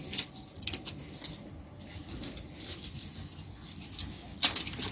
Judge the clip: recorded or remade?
recorded